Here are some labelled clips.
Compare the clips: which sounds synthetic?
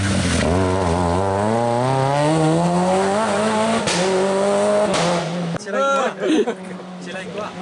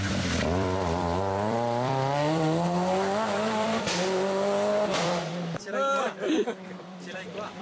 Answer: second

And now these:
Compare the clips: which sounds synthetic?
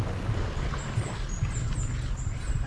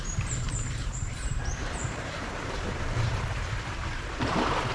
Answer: second